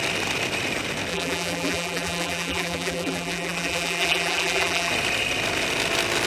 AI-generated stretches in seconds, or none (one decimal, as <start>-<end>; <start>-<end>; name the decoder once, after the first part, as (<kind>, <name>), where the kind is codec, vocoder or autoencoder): 1.1-4.9 (vocoder, BigVGAN v2)